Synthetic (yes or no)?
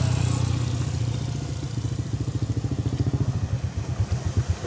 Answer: no